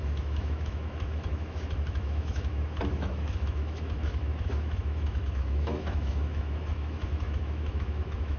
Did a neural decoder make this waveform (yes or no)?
yes